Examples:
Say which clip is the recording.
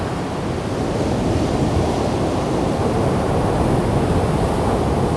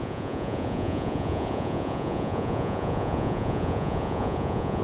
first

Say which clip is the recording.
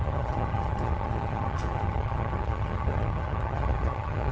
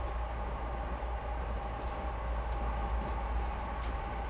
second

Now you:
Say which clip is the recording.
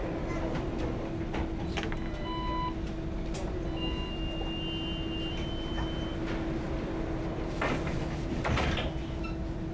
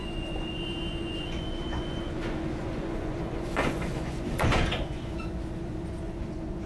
first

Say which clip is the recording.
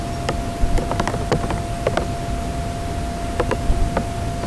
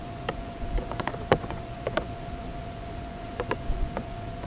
first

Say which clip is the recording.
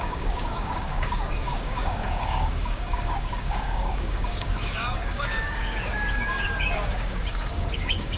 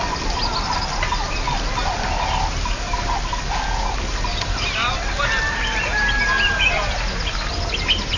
second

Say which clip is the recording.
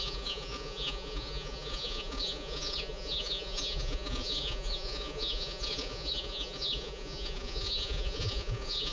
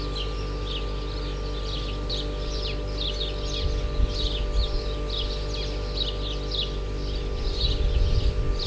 second